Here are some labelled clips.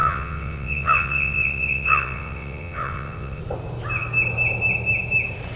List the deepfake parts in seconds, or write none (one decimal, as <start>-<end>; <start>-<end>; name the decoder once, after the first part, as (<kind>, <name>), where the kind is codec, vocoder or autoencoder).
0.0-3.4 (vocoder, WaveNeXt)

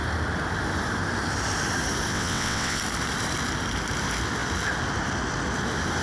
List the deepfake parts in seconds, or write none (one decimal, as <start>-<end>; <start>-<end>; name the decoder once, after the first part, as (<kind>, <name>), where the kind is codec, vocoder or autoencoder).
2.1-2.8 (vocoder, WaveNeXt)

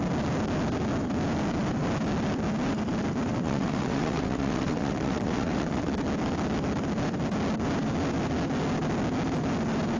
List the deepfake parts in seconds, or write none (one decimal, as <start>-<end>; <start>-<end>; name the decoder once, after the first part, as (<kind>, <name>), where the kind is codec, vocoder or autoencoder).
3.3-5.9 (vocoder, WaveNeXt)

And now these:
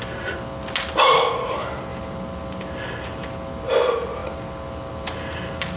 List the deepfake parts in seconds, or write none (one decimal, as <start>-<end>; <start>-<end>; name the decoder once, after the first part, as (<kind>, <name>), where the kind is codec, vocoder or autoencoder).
none

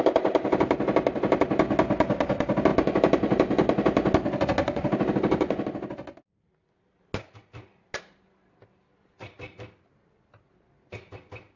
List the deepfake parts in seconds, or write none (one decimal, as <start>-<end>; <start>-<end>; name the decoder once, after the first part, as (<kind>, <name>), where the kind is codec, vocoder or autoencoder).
none